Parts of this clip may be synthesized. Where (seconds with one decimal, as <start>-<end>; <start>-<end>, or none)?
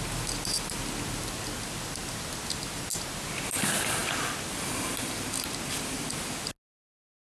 none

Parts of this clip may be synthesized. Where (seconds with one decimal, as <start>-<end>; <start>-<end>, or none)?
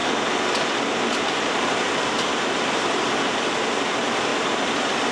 1.0-4.3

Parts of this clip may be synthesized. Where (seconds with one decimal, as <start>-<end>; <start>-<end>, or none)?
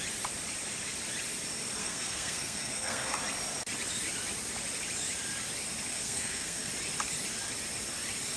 1.8-3.2; 5.9-6.7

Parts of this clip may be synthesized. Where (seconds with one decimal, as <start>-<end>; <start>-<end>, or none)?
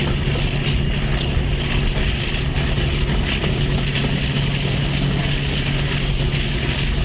none